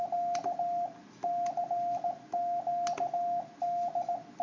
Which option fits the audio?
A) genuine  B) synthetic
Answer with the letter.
A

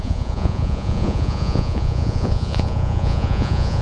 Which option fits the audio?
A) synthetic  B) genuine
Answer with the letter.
A